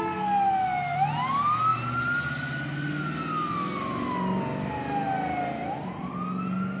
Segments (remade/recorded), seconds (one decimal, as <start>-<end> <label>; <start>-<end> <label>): 0.0-6.8 recorded